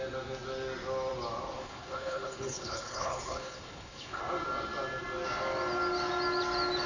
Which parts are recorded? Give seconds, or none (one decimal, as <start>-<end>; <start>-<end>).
0.0-1.6; 4.2-6.9